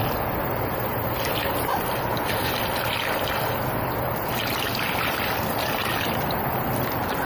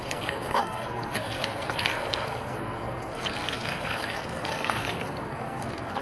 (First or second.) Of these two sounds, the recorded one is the first